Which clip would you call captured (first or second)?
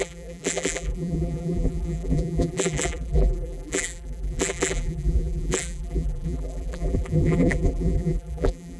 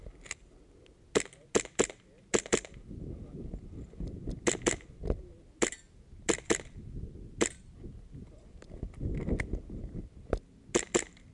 second